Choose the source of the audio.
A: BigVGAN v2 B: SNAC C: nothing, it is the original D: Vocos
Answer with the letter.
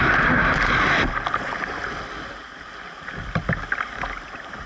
C